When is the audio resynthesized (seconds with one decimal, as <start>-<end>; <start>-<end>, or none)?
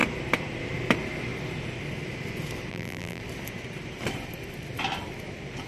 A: 2.7-3.2